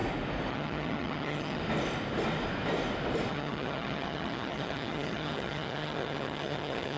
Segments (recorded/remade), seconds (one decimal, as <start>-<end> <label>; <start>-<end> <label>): 0.0-0.5 recorded; 0.5-1.6 remade; 1.6-3.3 recorded; 3.3-7.0 remade